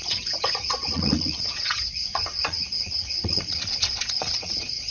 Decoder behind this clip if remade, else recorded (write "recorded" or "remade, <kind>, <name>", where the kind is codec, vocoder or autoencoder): remade, vocoder, Vocos